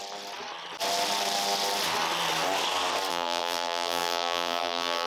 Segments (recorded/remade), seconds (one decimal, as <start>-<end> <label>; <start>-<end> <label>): 0.0-3.1 recorded; 3.1-5.1 remade